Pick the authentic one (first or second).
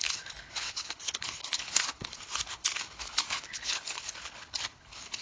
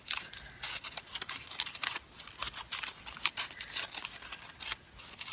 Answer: second